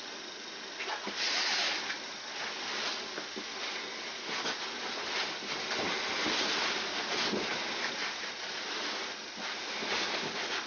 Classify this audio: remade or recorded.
recorded